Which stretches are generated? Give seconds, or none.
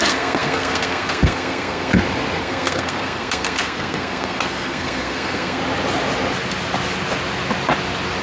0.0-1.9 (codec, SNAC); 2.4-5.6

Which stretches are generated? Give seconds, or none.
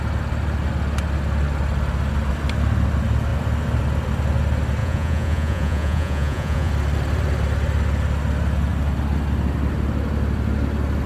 4.8-6.7 (vocoder, Vocos)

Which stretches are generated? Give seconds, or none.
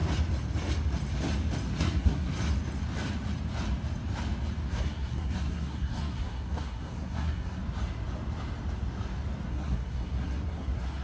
1.8-2.3 (codec, SNAC); 4.7-7.6; 9.5-11.0